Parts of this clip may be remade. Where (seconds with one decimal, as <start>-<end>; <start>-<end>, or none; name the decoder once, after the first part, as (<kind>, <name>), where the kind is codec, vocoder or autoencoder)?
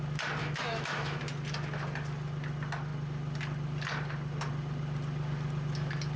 0.4-1.2 (autoencoder, DAC-VAE)